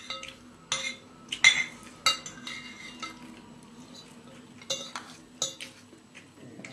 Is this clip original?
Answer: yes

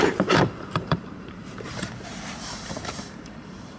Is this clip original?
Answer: no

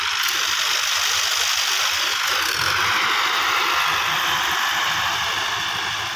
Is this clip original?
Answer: yes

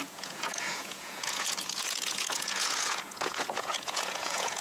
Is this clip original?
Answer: no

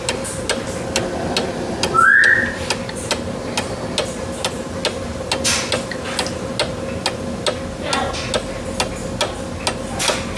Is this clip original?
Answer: yes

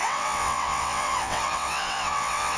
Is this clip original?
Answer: no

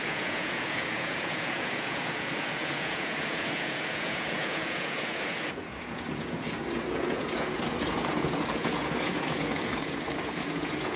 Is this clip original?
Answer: no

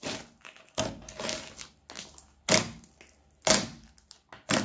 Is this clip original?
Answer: yes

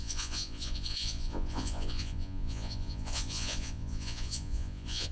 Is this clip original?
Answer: no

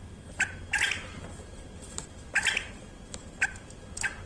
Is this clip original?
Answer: yes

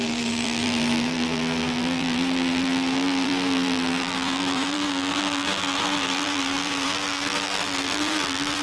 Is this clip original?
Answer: no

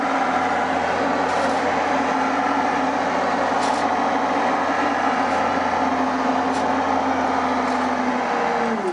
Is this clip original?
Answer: yes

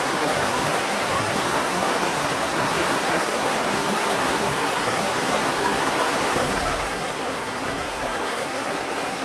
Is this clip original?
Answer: no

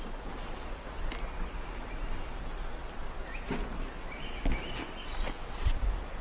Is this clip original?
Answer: yes